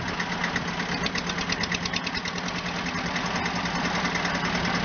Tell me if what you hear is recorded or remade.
recorded